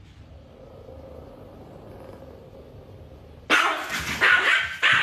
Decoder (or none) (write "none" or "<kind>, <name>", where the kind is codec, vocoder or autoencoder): none